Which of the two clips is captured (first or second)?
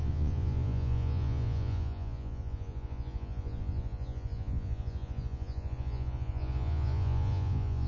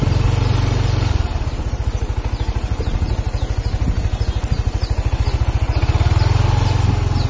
second